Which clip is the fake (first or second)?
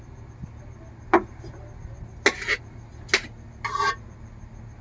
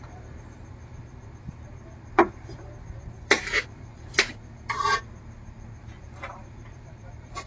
second